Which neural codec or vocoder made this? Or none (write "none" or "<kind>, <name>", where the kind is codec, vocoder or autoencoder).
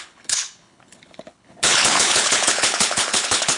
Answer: codec, HILCodec